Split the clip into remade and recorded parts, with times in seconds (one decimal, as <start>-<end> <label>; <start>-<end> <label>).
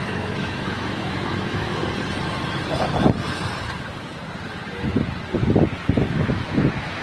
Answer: 0.0-1.8 remade; 1.8-6.0 recorded; 6.0-7.0 remade